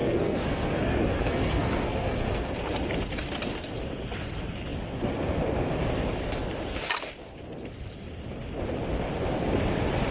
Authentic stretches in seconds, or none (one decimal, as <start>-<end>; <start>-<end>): 2.5-10.1